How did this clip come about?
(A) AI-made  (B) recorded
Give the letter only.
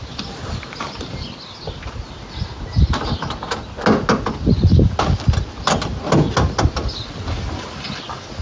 B